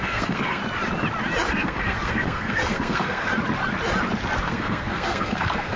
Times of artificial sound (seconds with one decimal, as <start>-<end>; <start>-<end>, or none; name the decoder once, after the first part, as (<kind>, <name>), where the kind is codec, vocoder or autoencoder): 0.0-0.6 (codec, SNAC); 1.5-3.3; 4.4-5.8